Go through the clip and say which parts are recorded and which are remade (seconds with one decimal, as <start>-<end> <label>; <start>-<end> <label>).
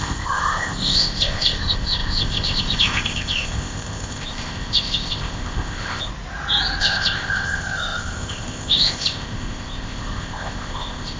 0.0-6.1 remade; 6.1-6.8 recorded; 6.8-11.2 remade